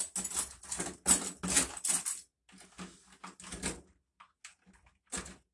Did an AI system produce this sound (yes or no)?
no